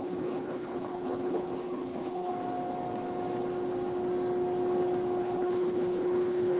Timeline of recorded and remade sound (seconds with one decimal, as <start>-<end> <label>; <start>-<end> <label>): 0.0-2.3 remade; 2.3-5.2 recorded; 5.2-6.6 remade